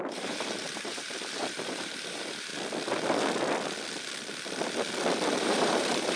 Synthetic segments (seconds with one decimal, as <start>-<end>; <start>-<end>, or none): 0.0-2.5; 5.4-6.2